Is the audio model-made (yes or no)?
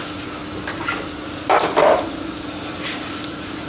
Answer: no